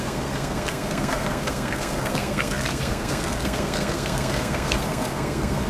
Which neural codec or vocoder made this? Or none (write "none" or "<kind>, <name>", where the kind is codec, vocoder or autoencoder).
codec, SNAC